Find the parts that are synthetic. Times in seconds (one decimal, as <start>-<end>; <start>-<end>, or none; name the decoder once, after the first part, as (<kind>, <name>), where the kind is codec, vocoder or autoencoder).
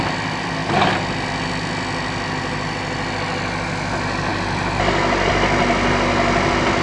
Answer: none